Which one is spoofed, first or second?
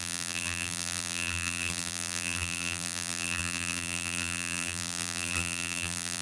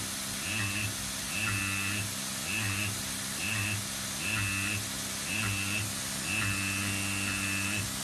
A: first